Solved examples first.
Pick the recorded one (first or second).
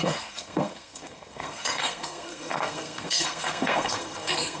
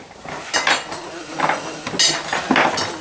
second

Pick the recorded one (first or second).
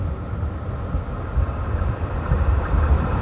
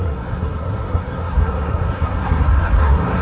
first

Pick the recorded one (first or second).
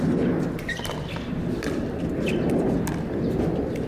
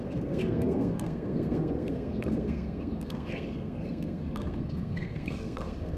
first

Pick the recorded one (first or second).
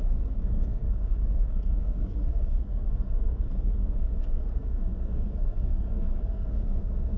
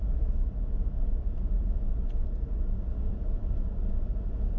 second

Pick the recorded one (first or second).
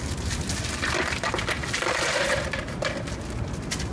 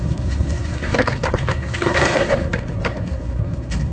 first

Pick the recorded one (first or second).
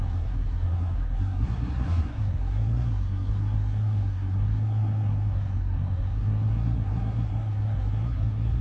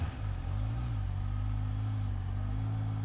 second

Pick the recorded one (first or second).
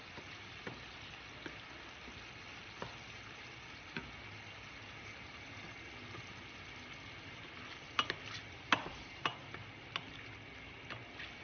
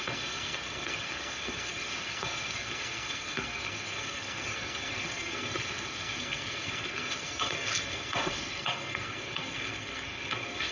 first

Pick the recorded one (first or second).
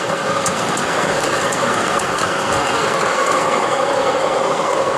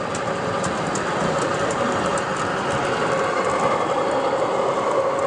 second